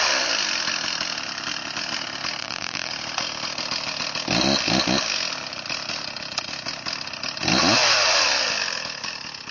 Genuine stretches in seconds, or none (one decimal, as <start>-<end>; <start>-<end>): 0.0-2.4; 2.9-9.5

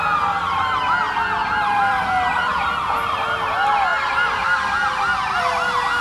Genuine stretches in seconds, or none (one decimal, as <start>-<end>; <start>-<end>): 0.0-1.4; 2.0-6.0

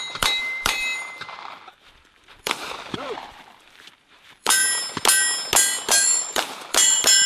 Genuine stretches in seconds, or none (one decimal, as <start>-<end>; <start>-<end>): 4.6-5.9

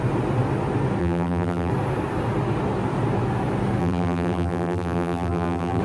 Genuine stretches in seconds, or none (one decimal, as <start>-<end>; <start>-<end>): 0.0-1.0; 1.7-3.8

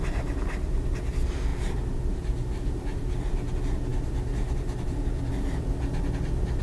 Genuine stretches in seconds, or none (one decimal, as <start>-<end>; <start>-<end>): none

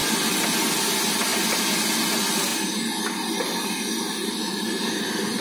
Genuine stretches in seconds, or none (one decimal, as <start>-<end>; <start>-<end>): 0.0-5.4

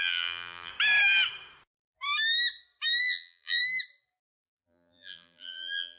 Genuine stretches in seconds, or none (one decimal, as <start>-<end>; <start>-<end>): 0.7-3.0; 3.6-4.2